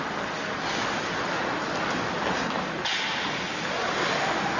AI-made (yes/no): no